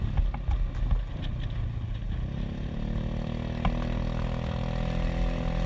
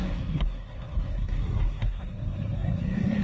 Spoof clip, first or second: second